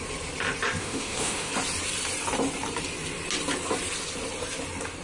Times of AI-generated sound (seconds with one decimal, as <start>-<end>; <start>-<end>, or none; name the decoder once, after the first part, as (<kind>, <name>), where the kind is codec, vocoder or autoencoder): 0.8-1.5 (autoencoder, DAC-VAE)